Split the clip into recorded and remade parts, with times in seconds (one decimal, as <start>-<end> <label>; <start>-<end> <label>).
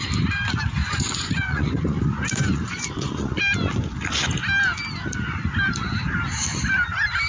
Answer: 0.0-0.8 recorded; 0.8-3.4 remade; 3.4-7.3 recorded